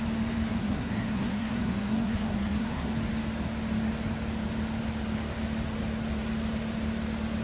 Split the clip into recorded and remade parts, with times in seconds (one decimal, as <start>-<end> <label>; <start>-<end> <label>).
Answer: 0.0-0.5 recorded; 0.5-2.9 remade; 2.9-7.4 recorded